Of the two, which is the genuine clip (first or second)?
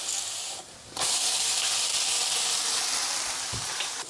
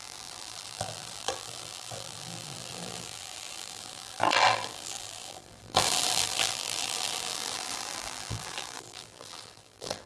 first